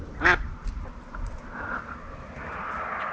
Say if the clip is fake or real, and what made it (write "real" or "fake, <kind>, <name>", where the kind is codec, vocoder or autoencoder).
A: real